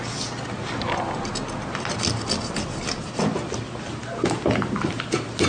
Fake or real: real